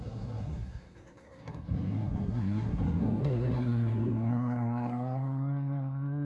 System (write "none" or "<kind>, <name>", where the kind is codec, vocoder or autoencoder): codec, SNAC